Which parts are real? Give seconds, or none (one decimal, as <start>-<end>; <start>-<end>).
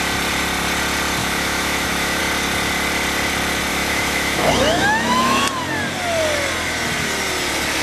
0.0-1.2; 2.2-3.7; 5.4-7.8